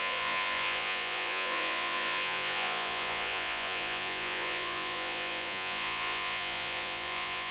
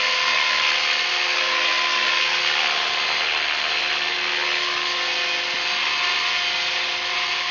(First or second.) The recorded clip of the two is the second